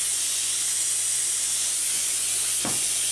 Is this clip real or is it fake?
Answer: fake